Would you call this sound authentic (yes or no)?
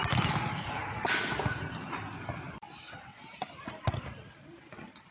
yes